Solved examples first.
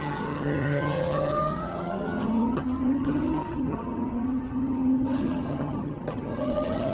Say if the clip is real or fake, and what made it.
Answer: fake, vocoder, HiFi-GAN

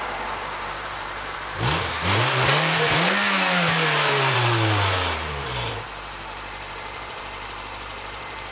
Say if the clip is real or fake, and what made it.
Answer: fake, vocoder, BigVGAN v2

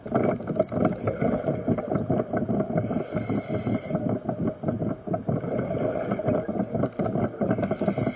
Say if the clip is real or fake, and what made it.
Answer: real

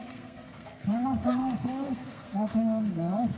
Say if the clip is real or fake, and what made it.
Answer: fake, codec, SNAC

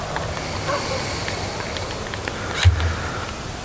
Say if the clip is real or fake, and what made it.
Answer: real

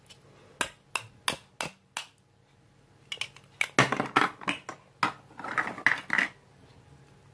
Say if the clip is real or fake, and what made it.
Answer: real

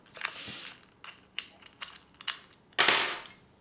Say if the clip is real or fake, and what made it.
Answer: real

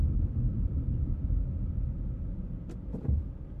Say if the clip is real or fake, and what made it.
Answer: real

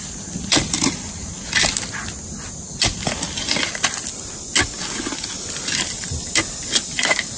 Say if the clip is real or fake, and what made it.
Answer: real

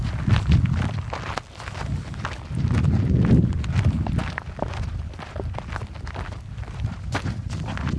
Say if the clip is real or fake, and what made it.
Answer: real